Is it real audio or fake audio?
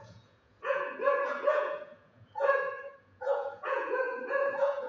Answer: fake